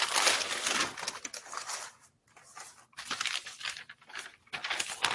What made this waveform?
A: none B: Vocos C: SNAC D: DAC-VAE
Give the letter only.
A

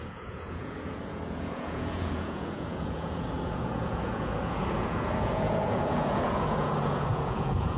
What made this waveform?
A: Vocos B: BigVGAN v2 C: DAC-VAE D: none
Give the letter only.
A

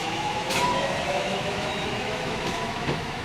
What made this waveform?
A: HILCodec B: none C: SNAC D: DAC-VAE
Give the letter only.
D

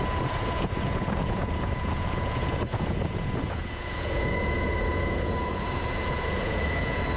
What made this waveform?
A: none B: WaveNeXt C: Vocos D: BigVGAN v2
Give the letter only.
C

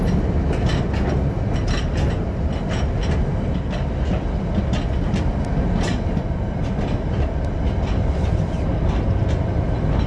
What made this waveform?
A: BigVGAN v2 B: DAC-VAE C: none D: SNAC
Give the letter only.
C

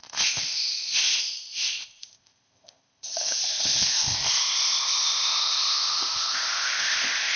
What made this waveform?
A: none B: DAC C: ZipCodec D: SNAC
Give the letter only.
C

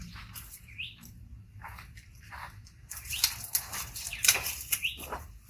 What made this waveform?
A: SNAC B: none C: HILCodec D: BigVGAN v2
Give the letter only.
D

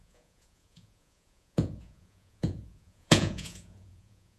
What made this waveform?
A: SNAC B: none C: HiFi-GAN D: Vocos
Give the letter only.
D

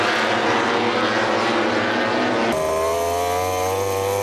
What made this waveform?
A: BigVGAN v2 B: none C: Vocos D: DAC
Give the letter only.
B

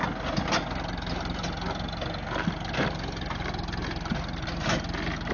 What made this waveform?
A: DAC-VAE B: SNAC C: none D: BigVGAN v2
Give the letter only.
C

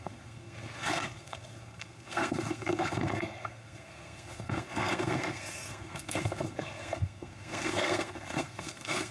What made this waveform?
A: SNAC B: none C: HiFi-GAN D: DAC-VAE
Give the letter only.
A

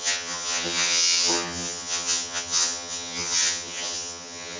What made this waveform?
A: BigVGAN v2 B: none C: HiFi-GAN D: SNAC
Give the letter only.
C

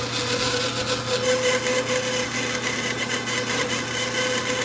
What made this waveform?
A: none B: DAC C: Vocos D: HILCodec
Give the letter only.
A